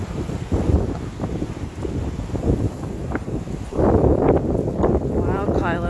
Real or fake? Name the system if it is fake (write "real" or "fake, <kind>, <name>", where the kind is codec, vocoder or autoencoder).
fake, vocoder, BigVGAN v2